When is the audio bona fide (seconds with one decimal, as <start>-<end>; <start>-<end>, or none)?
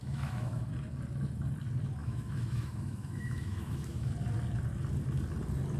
0.7-2.0; 4.1-5.8